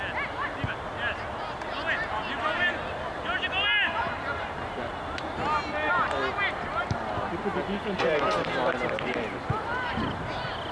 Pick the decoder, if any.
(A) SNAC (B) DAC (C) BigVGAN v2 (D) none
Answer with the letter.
D